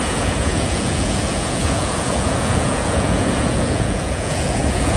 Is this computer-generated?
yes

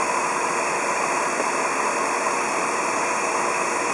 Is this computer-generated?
no